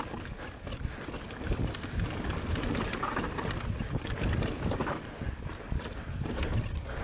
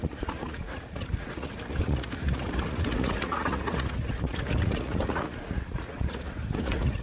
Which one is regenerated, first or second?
second